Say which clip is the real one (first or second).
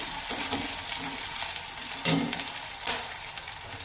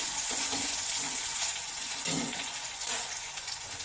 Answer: first